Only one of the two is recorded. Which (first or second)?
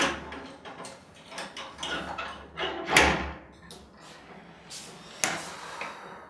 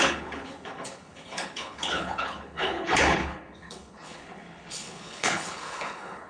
first